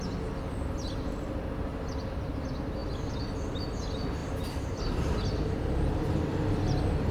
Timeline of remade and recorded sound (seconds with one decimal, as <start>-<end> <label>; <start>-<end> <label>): 0.0-6.3 recorded; 6.3-7.1 remade